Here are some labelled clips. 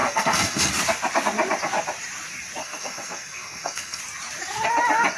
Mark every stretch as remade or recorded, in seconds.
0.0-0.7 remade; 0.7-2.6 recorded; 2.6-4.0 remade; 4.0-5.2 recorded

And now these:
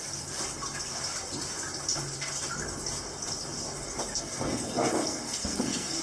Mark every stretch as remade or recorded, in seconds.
0.0-4.1 recorded; 4.1-6.0 remade

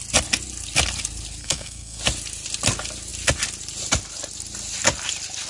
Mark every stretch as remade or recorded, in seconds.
0.0-1.4 recorded; 1.4-2.0 remade; 2.0-5.5 recorded

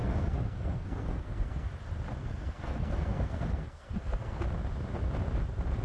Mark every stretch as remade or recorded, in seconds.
0.0-1.7 remade; 1.7-2.2 recorded; 2.2-4.4 remade; 4.4-5.8 recorded

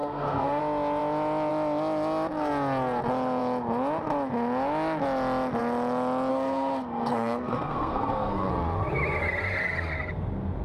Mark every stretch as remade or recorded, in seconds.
0.0-0.6 remade; 0.6-6.3 recorded; 6.3-8.5 remade; 8.5-10.6 recorded